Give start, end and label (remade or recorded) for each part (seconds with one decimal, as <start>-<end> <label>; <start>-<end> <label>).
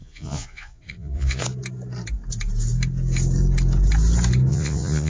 0.0-1.4 remade; 1.4-4.5 recorded; 4.5-5.1 remade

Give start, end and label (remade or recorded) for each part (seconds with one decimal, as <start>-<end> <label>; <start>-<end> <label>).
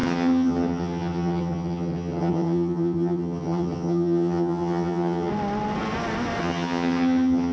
0.0-5.3 remade; 5.3-6.4 recorded; 6.4-7.5 remade